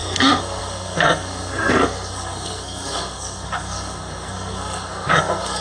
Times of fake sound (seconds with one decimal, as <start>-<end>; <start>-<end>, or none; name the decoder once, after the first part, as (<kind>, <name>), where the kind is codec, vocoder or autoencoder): 0.0-5.6 (codec, SNAC)

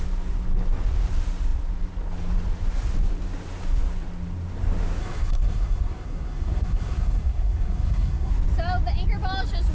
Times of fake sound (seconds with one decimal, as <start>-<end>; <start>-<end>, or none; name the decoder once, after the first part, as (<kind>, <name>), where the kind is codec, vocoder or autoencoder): 5.0-8.3 (codec, SNAC)

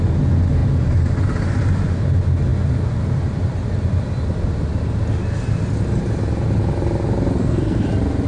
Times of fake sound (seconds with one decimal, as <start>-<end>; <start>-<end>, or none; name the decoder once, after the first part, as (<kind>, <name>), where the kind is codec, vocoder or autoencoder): 7.4-7.9 (codec, SNAC)